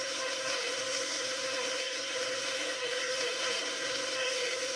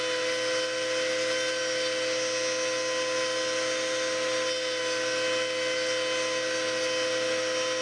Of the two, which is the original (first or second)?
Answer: second